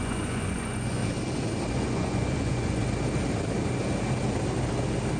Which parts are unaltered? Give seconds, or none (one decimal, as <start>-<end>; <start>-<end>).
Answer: 1.0-1.7; 2.8-5.2